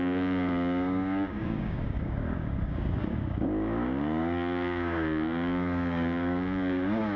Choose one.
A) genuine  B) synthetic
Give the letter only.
B